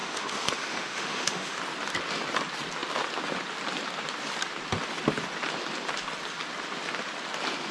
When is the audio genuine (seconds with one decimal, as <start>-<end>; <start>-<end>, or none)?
1.6-7.7